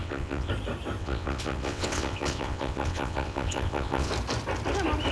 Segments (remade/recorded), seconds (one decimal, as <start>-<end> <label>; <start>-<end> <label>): 0.0-0.5 remade; 0.5-1.0 recorded; 1.0-4.1 remade; 4.1-5.1 recorded